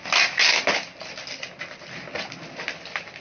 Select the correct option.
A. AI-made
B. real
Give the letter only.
B